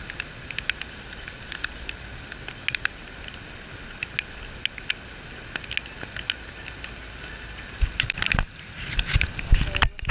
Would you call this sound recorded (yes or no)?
yes